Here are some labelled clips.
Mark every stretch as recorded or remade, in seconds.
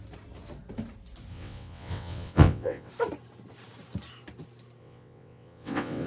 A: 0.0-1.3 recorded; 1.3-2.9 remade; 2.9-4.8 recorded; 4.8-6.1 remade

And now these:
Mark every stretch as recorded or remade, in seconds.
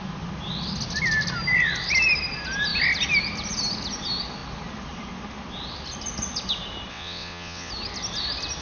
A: 0.0-6.9 recorded; 6.9-7.7 remade; 7.7-8.6 recorded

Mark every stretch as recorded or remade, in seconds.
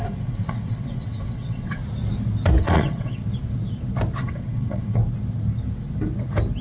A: 0.0-1.8 remade; 1.8-2.6 recorded; 2.6-3.2 remade; 3.2-4.2 recorded; 4.2-5.0 remade; 5.0-6.6 recorded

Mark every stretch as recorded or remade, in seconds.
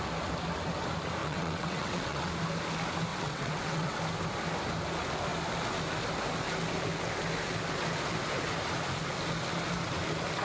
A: 0.0-1.2 recorded; 1.2-2.3 remade; 2.3-3.1 recorded; 3.1-4.0 remade; 4.0-10.4 recorded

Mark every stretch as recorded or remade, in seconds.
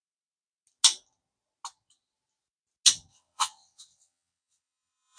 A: 0.0-3.1 recorded; 3.1-5.2 remade